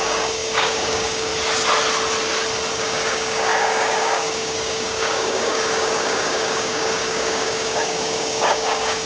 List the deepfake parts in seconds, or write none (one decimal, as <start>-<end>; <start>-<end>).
0.0-1.3; 2.7-9.1